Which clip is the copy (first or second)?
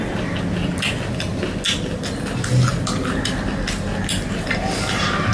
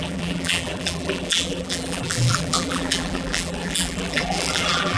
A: second